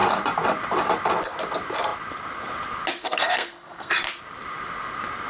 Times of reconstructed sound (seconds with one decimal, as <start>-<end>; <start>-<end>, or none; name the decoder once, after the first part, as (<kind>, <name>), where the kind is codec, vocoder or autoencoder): 3.0-3.9 (codec, SNAC)